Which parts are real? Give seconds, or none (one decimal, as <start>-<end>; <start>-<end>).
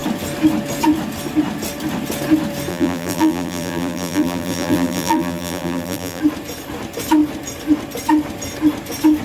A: 0.0-2.7; 6.2-9.2